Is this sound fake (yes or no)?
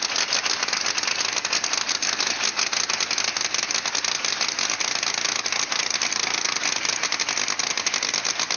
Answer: no